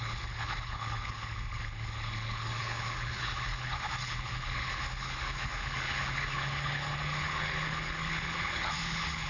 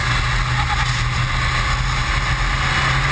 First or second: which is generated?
first